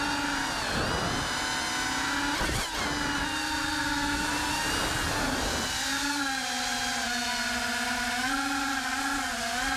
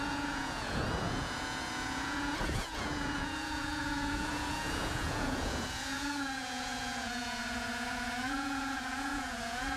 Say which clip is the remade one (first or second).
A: second